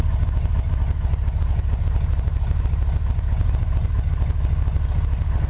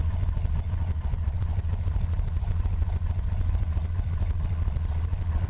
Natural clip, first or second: first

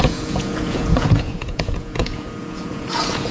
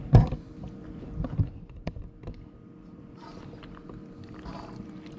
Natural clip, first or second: second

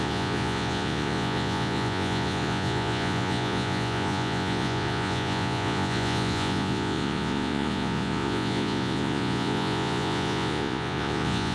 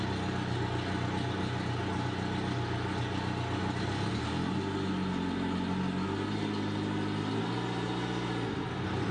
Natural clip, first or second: second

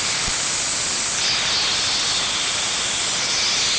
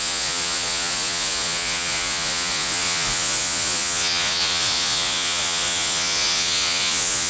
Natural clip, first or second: first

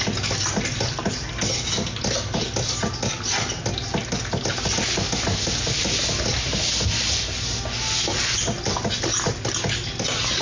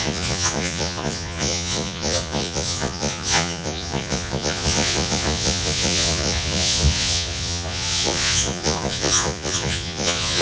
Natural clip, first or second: first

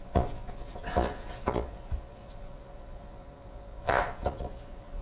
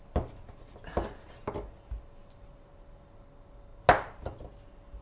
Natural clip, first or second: second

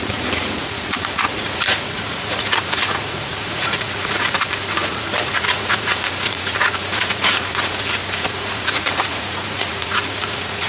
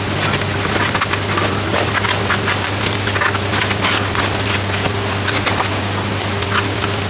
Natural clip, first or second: second